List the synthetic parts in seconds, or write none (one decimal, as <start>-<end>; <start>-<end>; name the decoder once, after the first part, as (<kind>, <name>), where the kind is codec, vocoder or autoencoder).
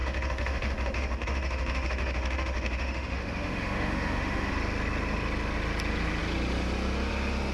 0.0-4.5 (autoencoder, DAC-VAE)